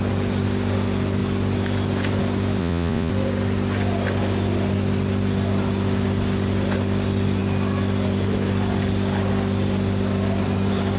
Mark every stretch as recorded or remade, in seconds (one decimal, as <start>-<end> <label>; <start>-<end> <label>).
0.0-2.6 recorded; 2.6-3.1 remade; 3.1-11.0 recorded